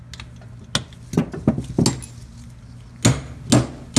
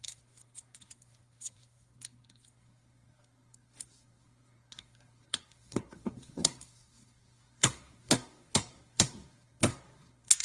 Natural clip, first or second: first